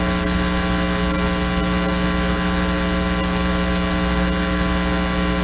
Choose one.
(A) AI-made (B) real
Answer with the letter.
B